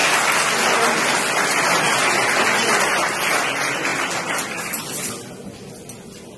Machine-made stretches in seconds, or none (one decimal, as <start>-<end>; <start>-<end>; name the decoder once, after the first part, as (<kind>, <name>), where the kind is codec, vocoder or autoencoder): none